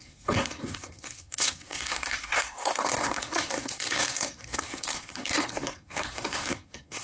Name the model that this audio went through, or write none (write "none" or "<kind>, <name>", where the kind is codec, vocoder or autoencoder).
codec, SNAC